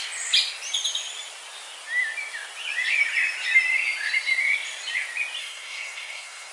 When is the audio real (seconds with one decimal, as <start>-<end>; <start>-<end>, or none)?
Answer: 0.0-5.4